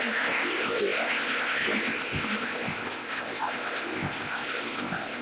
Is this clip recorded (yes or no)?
no